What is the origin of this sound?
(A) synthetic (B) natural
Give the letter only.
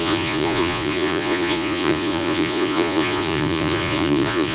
A